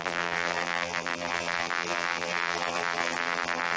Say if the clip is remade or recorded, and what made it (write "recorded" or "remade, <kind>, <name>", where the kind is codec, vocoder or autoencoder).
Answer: remade, vocoder, BigVGAN v2